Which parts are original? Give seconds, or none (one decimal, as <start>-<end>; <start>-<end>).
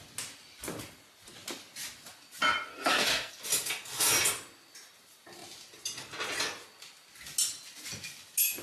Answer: 0.0-2.7; 3.3-8.6